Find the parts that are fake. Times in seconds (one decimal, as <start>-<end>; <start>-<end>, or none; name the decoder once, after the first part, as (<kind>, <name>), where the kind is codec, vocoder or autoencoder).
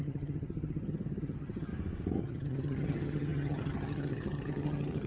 0.0-1.7 (vocoder, HiFi-GAN); 2.2-5.1